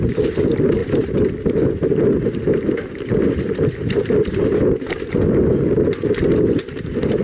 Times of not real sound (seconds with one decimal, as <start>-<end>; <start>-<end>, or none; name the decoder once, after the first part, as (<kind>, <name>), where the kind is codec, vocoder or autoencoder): 0.8-2.1 (vocoder, BigVGAN v2)